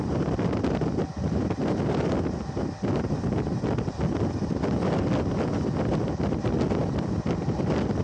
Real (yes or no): yes